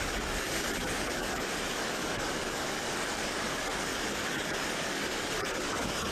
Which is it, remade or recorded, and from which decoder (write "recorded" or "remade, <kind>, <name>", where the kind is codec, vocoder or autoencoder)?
remade, codec, DAC